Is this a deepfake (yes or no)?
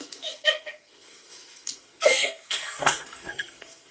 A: yes